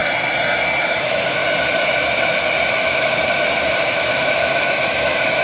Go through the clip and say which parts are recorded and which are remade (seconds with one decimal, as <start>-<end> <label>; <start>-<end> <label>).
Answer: 0.0-0.8 recorded; 0.8-1.4 remade; 1.4-2.7 recorded; 2.7-5.4 remade